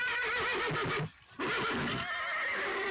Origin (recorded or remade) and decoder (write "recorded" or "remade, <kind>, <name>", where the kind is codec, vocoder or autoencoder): recorded